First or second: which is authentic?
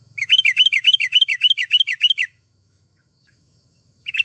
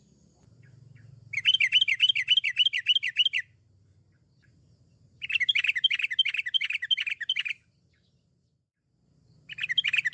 second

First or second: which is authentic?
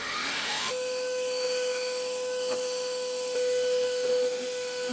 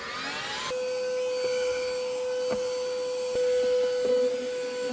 second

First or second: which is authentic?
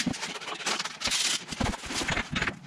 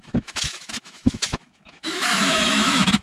first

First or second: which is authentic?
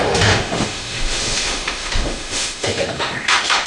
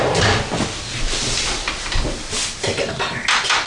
second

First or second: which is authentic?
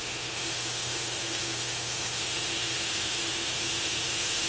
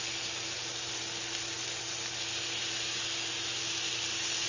second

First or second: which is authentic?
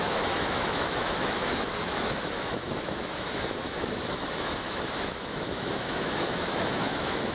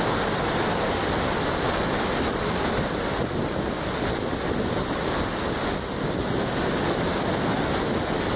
second